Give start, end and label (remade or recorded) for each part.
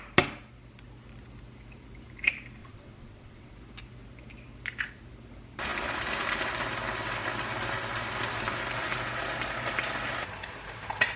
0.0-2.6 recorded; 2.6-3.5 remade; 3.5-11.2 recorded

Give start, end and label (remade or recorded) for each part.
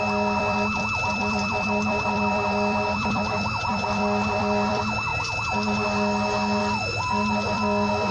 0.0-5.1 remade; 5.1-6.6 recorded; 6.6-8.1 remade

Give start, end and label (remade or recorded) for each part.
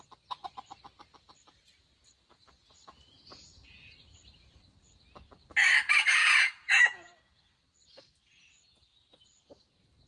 0.0-6.1 recorded; 6.1-7.1 remade; 7.1-10.1 recorded